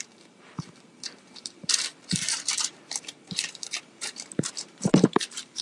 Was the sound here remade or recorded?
remade